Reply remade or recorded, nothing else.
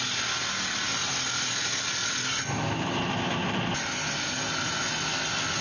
recorded